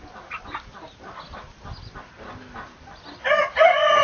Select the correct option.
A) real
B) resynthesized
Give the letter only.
A